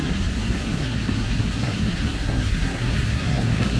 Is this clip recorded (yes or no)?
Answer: no